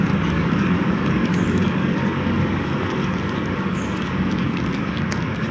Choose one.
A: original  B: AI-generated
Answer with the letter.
B